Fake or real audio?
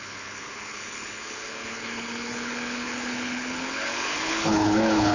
fake